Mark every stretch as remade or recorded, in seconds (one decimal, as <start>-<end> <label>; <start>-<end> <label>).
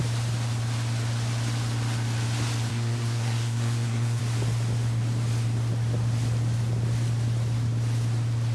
0.0-2.7 recorded; 2.7-4.2 remade; 4.2-8.5 recorded